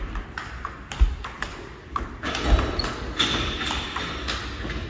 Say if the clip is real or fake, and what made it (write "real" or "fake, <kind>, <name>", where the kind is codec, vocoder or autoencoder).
real